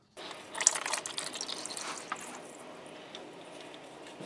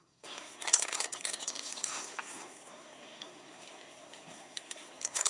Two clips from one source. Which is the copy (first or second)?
second